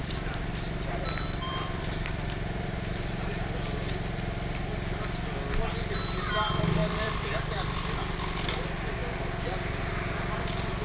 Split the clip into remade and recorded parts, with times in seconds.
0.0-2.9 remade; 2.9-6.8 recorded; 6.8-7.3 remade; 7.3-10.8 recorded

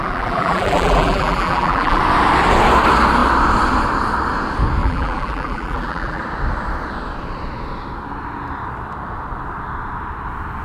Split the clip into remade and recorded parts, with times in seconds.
0.0-2.0 remade; 2.0-4.8 recorded; 4.8-6.2 remade; 6.2-10.6 recorded

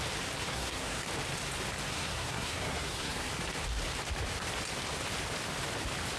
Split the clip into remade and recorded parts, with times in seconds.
0.0-0.5 recorded; 0.5-1.1 remade; 1.1-1.9 recorded; 1.9-3.3 remade; 3.3-6.2 recorded

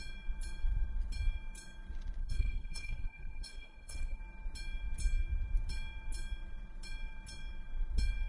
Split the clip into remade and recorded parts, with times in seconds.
0.0-2.2 recorded; 2.2-4.2 remade; 4.2-8.3 recorded

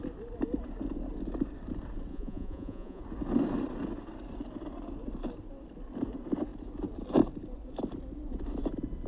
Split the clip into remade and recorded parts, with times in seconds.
0.0-2.1 recorded; 2.1-3.0 remade; 3.0-9.1 recorded

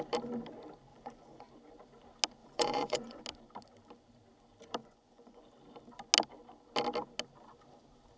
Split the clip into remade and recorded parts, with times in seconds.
0.0-0.9 recorded; 0.9-1.5 remade; 1.5-2.4 recorded; 2.4-3.2 remade; 3.2-4.8 recorded; 4.8-5.4 remade; 5.4-8.2 recorded